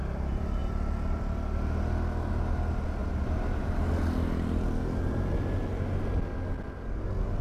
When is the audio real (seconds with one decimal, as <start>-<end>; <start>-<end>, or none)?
0.0-3.0; 3.9-7.4